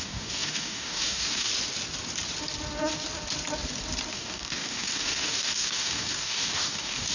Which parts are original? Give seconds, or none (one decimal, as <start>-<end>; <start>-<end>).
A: 1.5-4.1